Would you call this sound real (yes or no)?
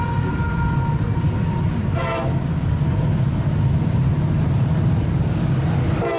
yes